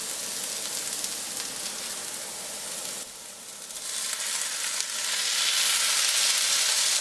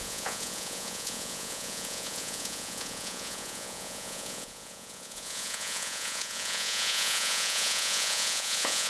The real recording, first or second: first